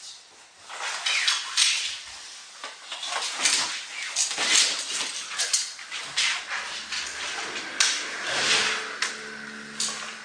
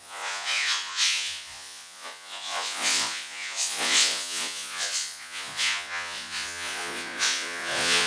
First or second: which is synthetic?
second